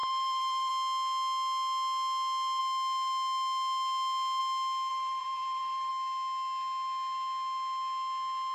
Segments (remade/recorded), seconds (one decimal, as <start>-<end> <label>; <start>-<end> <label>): 0.0-0.7 remade; 0.7-4.9 recorded; 4.9-5.9 remade; 5.9-8.5 recorded